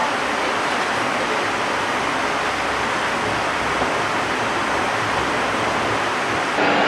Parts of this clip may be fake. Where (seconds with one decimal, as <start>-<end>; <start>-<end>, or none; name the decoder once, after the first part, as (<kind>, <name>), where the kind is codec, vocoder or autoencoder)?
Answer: none

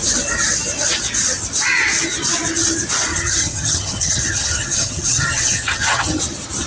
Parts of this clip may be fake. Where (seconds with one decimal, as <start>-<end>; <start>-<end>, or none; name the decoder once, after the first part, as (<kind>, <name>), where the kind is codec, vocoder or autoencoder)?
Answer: 3.1-6.2 (vocoder, HiFi-GAN)

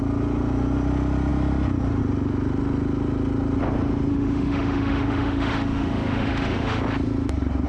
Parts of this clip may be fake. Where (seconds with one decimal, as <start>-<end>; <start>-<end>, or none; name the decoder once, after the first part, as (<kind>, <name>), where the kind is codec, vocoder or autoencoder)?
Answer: 4.1-6.8 (autoencoder, DAC-VAE)

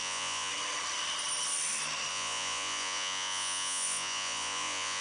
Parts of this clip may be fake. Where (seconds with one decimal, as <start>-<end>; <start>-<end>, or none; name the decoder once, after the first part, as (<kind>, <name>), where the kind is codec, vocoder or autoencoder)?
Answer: 0.0-0.5 (vocoder, Vocos); 2.1-5.0

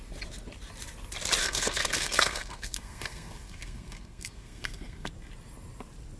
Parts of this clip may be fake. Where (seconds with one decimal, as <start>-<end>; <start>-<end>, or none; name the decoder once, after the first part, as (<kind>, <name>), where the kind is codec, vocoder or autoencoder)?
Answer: 1.4-5.1 (codec, SNAC)

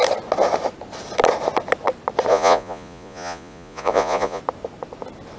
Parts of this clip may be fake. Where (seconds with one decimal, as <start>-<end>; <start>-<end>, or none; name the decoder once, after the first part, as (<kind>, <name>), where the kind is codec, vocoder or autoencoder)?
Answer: 2.3-4.4 (vocoder, Vocos)

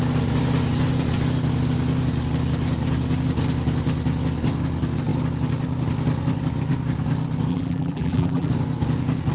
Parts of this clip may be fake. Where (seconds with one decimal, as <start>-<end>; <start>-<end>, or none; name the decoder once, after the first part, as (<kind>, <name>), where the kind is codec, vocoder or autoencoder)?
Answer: 7.5-8.5 (vocoder, BigVGAN v2)